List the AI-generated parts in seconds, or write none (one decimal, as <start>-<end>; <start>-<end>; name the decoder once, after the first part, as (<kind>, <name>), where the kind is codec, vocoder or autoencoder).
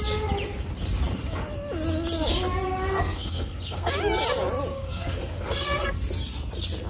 3.0-3.9 (codec, SNAC); 4.7-5.9